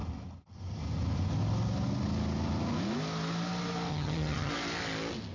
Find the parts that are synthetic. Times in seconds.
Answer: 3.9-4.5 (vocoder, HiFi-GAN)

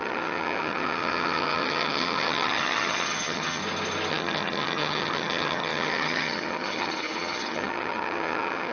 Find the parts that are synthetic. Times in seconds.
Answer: 0.0-3.6 (vocoder, HiFi-GAN); 4.1-8.7

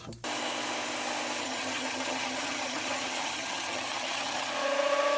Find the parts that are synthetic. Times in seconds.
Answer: 1.4-4.5 (vocoder, HiFi-GAN)

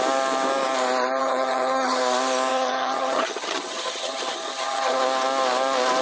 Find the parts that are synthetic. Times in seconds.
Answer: 1.2-2.0 (vocoder, HiFi-GAN); 2.5-5.0